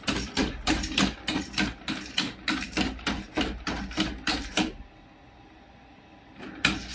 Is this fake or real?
real